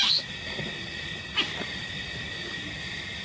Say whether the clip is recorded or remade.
recorded